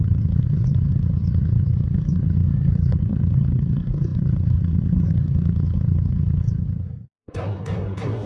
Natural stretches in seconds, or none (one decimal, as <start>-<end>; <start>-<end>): none